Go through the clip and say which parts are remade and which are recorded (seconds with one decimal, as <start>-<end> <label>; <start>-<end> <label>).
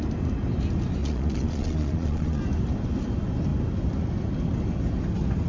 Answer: 0.0-1.0 recorded; 1.0-2.4 remade; 2.4-5.5 recorded